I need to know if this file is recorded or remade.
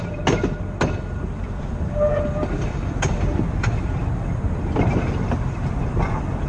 recorded